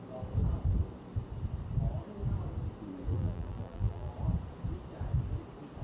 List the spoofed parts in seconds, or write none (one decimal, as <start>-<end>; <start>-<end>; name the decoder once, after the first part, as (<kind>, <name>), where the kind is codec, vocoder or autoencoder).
3.1-4.1 (vocoder, BigVGAN v2)